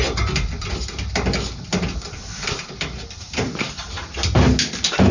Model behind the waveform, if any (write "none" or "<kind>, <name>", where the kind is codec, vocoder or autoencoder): none